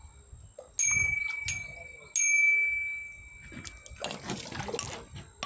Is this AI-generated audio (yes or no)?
no